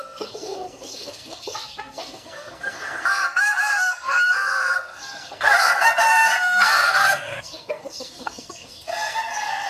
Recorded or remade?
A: remade